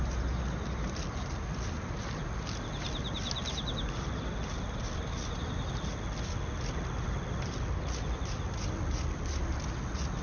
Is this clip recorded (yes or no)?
yes